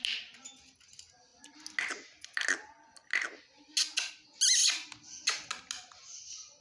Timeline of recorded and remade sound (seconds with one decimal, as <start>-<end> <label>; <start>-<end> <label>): 0.0-6.6 recorded